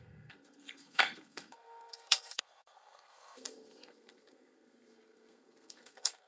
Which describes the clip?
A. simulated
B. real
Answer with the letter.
A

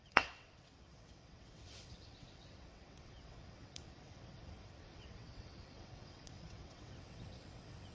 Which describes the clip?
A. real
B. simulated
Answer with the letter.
B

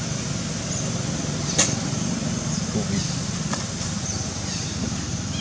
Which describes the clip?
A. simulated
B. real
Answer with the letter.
B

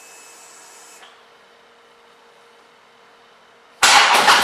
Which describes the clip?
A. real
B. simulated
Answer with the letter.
A